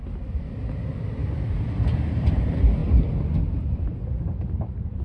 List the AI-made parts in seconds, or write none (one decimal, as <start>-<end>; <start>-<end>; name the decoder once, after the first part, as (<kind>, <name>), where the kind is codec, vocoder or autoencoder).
none